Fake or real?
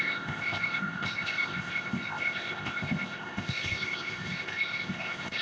fake